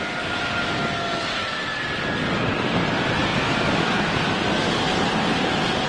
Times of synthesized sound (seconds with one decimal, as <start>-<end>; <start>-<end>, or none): 3.3-4.1